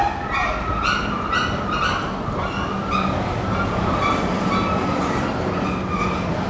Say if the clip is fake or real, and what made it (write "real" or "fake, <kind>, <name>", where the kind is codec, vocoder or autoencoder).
real